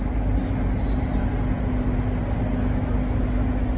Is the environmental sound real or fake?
real